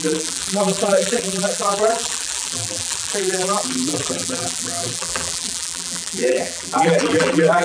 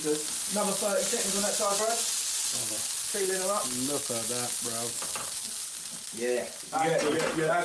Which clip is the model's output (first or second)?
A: first